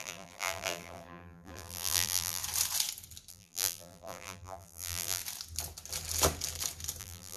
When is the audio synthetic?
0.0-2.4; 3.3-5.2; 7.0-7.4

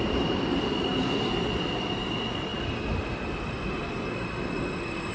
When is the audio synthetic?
none